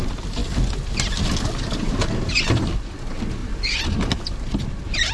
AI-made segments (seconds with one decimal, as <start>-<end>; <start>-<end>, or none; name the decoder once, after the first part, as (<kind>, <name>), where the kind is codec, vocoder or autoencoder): none